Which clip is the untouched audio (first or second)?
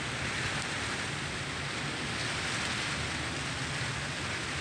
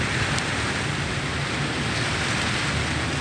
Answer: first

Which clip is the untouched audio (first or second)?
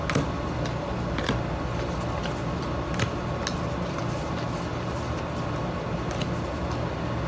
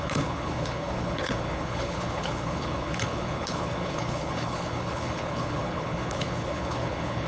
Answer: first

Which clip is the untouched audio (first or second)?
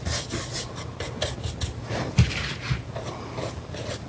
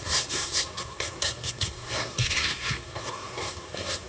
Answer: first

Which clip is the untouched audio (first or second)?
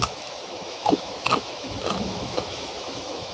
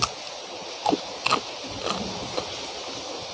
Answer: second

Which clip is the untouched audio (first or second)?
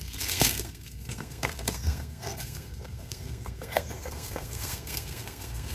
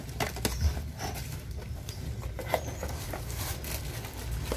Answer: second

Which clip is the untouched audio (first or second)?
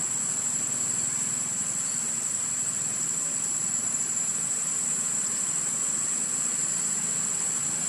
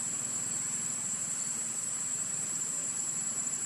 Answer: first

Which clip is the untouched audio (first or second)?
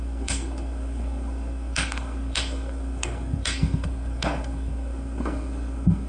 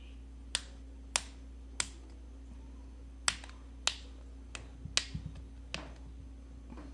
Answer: second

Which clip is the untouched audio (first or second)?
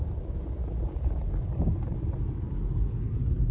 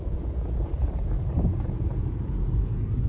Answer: first